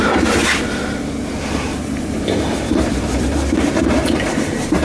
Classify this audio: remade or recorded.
remade